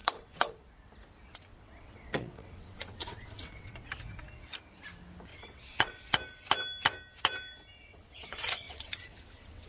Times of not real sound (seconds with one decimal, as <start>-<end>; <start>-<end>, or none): 0.0-0.7; 1.5-3.9; 5.3-6.0; 7.8-9.7